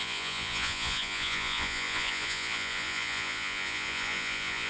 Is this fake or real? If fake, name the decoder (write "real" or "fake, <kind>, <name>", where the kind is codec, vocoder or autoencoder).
fake, vocoder, Vocos